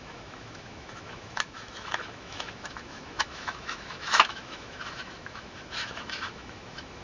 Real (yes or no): no